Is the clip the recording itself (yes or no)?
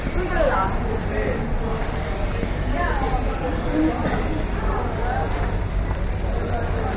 yes